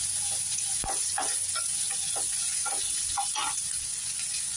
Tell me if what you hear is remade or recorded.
remade